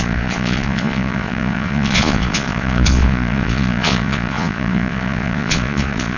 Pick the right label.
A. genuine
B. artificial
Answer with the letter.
B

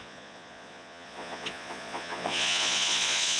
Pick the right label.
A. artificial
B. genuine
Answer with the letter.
A